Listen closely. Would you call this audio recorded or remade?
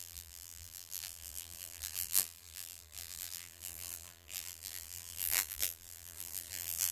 remade